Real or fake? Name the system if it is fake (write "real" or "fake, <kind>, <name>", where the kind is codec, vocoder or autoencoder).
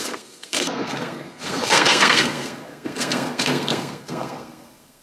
fake, codec, SNAC